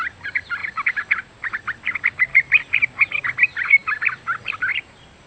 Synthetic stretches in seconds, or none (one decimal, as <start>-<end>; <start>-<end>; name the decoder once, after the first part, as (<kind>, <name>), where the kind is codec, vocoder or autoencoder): 2.3-2.8 (vocoder, BigVGAN v2); 4.7-5.3